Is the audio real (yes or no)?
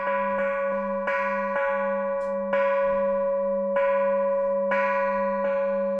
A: yes